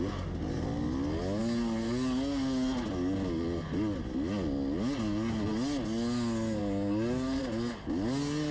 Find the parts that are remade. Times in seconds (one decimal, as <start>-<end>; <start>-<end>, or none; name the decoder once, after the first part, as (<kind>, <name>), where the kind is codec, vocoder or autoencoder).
none